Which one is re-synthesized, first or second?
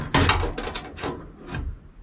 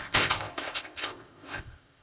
second